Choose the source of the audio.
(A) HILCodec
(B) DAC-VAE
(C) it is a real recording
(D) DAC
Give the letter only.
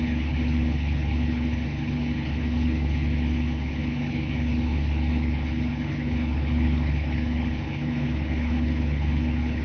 A